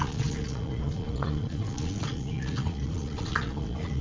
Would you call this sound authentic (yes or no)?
no